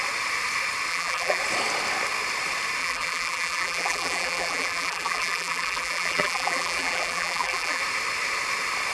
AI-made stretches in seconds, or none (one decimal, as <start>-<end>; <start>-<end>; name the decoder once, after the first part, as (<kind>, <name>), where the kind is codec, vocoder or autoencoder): 0.9-1.4 (vocoder, BigVGAN v2); 2.8-7.8